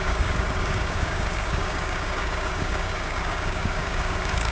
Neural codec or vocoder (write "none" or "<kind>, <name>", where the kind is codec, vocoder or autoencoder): codec, DAC